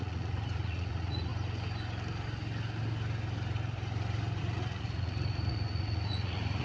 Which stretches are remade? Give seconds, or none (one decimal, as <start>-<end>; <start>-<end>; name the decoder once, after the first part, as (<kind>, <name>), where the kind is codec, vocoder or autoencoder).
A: 0.0-1.3 (vocoder, Vocos); 4.4-6.6